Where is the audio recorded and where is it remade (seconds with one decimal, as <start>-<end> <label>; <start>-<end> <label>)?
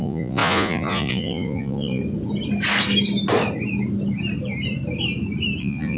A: 0.0-2.0 remade; 2.0-5.6 recorded; 5.6-6.0 remade